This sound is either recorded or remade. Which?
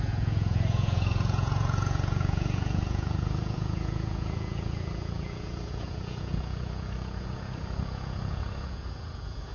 remade